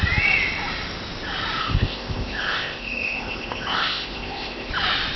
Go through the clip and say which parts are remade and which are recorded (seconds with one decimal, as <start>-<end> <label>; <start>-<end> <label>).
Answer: 0.0-1.6 recorded; 1.6-4.7 remade; 4.7-5.2 recorded